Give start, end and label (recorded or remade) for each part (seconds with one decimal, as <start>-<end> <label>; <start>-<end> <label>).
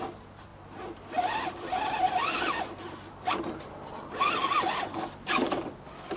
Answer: 0.0-4.9 recorded; 4.9-5.7 remade; 5.7-6.2 recorded